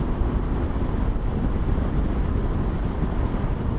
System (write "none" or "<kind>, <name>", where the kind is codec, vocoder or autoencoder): none